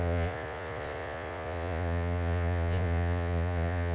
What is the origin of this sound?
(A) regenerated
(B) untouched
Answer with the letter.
A